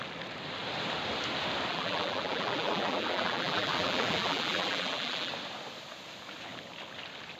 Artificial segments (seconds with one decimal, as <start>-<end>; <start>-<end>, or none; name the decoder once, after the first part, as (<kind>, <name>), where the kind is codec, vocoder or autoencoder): 1.7-5.3 (vocoder, BigVGAN v2)